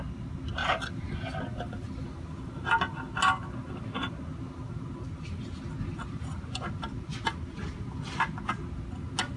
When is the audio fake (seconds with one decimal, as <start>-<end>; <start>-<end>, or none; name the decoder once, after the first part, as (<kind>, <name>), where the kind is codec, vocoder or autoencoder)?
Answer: none